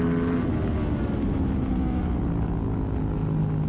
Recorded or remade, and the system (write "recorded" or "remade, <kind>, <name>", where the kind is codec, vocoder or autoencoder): recorded